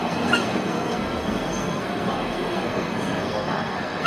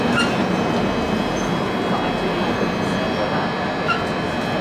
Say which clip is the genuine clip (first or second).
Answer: second